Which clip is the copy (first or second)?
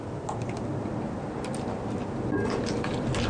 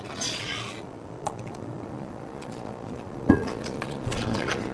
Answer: second